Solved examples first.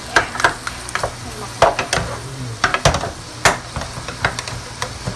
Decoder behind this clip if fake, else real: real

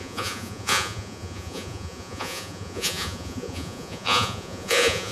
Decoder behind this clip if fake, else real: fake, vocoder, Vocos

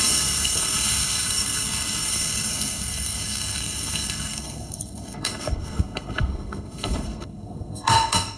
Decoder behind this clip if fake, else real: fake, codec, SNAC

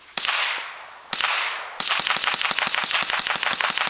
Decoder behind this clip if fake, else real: real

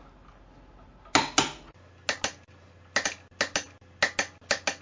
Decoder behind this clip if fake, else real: real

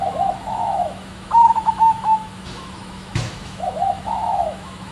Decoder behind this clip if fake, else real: fake, autoencoder, DAC-VAE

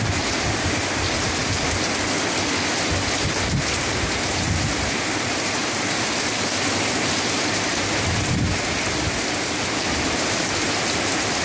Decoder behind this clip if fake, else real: real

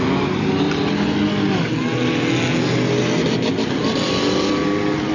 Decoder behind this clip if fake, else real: real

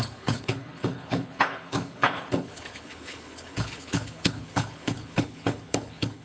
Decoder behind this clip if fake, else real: fake, codec, HILCodec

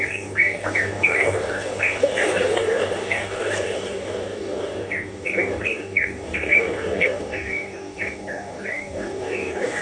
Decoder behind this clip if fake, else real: fake, codec, DAC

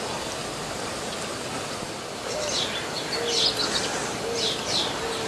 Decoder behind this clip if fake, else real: real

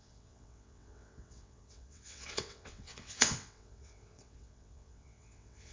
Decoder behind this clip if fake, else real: fake, vocoder, WaveNeXt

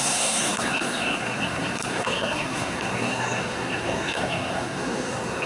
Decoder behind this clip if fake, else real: fake, codec, SNAC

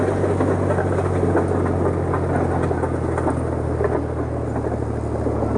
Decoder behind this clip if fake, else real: real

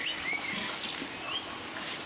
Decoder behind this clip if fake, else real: real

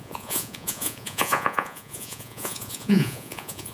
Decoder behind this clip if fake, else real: fake, vocoder, Vocos